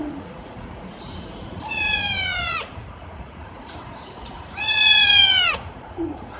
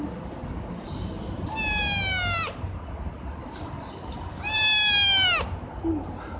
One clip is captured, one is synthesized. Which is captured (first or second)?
second